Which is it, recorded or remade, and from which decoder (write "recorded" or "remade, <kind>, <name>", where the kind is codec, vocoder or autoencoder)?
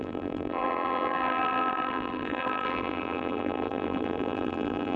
remade, vocoder, BigVGAN v2